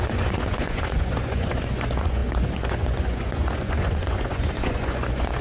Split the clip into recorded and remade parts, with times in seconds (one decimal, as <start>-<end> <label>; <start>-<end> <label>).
0.0-5.4 remade